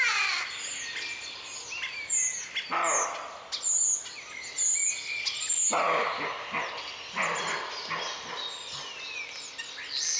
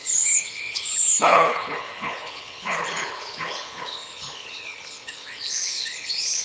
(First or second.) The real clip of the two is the first